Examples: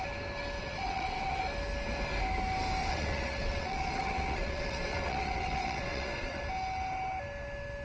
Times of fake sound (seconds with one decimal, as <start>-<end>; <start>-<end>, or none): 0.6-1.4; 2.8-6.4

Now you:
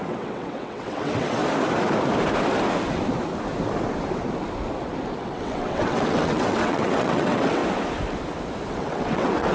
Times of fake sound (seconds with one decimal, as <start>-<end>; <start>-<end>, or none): 0.0-1.4; 5.2-7.6; 8.7-9.5

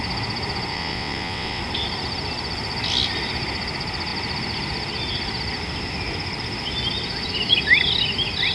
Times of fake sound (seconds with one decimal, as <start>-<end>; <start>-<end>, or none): 0.7-1.6

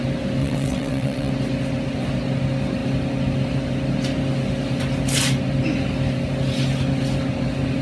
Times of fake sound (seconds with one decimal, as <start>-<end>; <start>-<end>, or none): 0.4-1.3

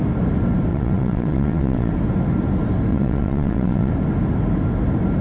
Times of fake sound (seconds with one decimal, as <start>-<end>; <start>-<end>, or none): 0.7-1.9; 2.9-3.9

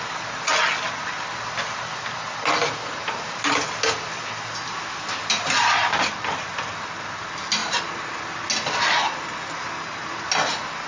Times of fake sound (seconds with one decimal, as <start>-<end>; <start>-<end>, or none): none

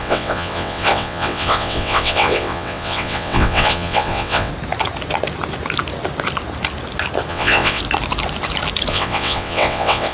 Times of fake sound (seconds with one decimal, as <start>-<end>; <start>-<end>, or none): 0.0-4.5; 7.3-7.8; 8.9-10.1